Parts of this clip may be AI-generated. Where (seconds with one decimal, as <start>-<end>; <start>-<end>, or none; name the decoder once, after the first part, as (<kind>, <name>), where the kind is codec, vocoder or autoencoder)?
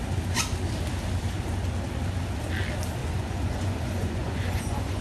3.0-5.0 (vocoder, Vocos)